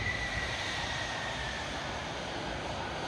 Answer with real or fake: fake